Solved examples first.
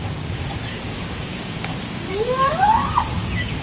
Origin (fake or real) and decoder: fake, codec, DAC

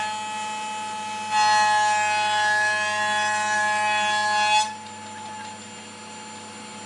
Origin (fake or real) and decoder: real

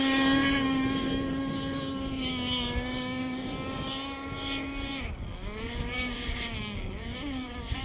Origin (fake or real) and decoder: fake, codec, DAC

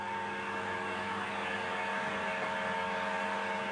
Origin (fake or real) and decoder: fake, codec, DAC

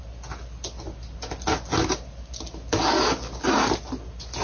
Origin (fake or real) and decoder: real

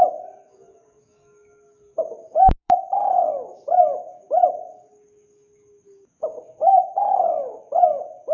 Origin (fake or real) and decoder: fake, codec, DAC